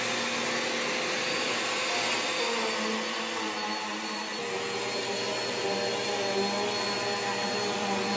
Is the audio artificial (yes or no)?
no